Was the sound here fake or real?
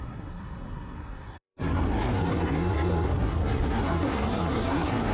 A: fake